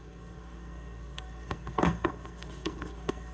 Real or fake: fake